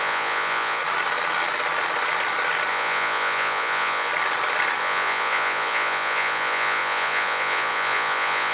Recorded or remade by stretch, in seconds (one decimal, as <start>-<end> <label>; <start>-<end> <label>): 0.0-0.8 remade; 0.8-2.7 recorded; 2.7-4.1 remade; 4.1-4.8 recorded; 4.8-8.5 remade